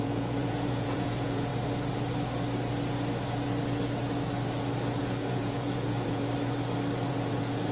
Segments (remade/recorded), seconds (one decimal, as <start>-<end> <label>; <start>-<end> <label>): 0.0-1.5 remade; 1.5-5.0 recorded; 5.0-6.3 remade; 6.3-7.1 recorded; 7.1-7.7 remade